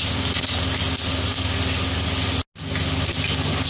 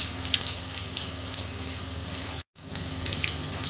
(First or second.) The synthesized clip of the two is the second